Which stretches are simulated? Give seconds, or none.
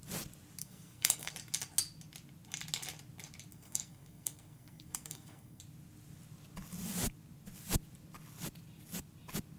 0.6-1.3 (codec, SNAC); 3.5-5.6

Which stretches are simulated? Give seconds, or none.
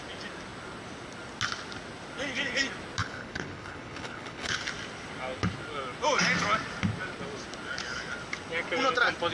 3.0-4.6 (codec, HILCodec)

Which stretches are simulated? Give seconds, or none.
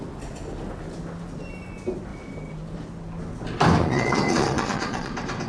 3.8-5.1 (vocoder, Vocos)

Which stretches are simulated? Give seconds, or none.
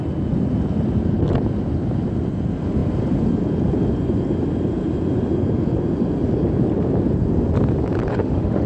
8.1-8.7 (autoencoder, DAC-VAE)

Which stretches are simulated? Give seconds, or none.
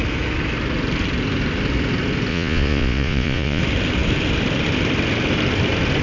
2.3-3.6 (vocoder, Vocos)